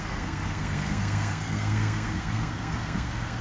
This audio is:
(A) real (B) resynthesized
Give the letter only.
B